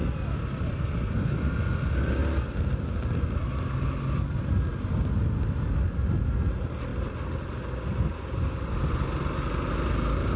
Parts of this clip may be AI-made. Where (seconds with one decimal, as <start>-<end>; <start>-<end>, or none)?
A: none